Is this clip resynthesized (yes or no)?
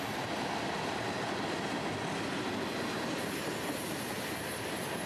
no